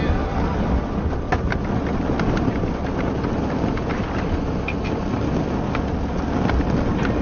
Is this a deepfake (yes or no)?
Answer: no